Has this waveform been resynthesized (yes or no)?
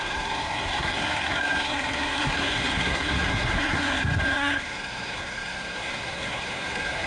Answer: yes